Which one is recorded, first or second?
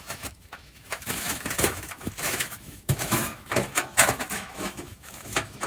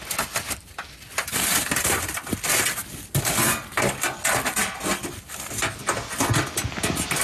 second